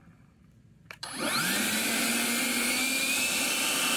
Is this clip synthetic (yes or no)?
no